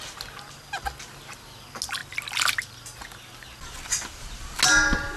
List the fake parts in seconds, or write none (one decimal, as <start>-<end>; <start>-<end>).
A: none